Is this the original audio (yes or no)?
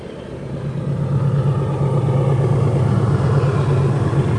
yes